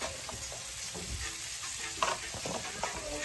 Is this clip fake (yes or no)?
no